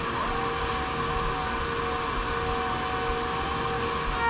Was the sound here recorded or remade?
recorded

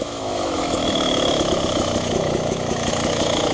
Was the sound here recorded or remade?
remade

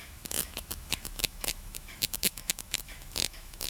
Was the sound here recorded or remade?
remade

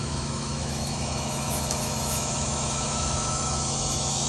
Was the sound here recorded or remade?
remade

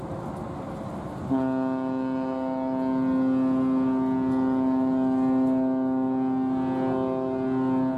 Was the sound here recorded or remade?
recorded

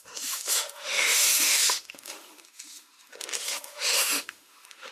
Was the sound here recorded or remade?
remade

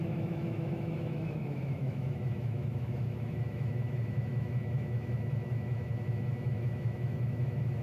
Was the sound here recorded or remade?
remade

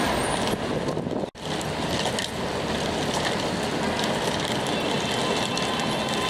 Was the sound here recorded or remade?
recorded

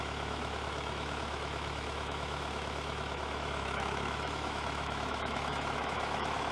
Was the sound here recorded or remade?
remade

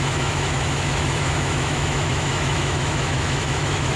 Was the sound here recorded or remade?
remade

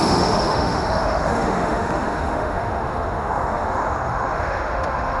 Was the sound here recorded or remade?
remade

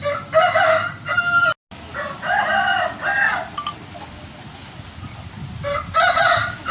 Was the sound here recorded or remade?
recorded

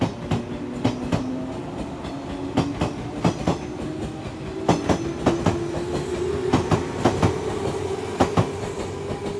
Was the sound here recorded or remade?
recorded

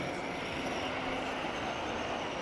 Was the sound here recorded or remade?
recorded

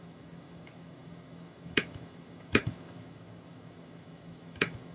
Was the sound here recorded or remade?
remade